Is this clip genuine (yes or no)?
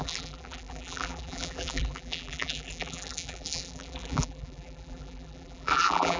no